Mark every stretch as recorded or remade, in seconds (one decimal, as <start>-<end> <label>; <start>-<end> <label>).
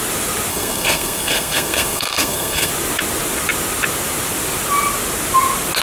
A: 0.0-0.5 recorded; 0.5-2.7 remade; 2.7-5.8 recorded